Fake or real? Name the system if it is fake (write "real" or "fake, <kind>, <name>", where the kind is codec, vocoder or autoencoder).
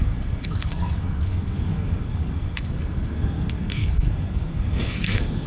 fake, codec, SNAC